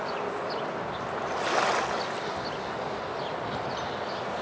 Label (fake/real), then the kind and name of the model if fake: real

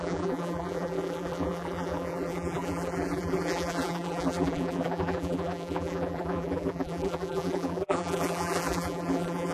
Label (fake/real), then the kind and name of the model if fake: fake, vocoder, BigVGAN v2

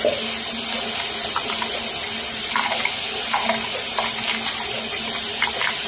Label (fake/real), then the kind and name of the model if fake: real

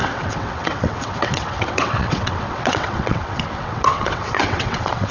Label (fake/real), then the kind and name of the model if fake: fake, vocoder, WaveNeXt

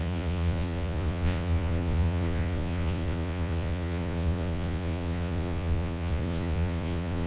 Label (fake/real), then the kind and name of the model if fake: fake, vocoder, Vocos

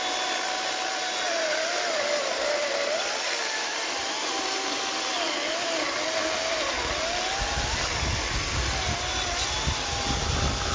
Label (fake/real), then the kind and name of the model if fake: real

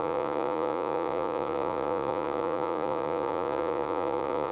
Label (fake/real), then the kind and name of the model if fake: fake, vocoder, Vocos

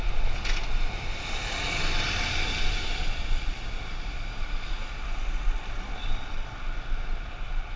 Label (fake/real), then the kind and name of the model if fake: real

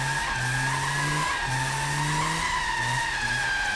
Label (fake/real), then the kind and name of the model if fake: real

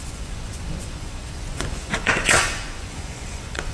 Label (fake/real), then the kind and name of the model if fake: fake, vocoder, Vocos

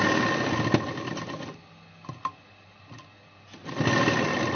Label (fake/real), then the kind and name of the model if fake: real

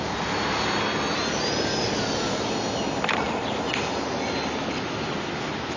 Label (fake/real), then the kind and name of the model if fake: real